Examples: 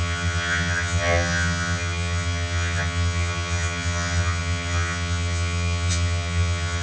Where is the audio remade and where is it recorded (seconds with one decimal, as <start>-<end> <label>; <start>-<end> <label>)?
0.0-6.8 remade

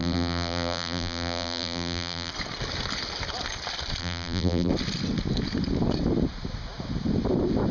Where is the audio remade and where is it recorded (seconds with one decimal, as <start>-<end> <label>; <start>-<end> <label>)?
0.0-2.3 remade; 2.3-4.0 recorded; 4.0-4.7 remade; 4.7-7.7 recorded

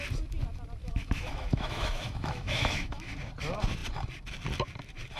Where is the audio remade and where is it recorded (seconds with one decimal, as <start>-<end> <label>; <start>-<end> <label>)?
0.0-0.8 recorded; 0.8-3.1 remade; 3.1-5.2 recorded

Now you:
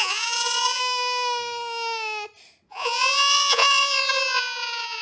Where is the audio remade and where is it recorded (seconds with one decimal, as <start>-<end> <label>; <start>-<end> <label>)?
0.0-0.8 remade; 0.8-2.7 recorded; 2.7-5.0 remade